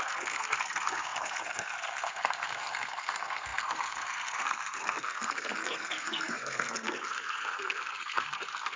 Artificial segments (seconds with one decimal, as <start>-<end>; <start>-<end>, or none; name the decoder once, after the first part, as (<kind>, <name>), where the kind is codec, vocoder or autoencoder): 0.0-8.8 (codec, SNAC)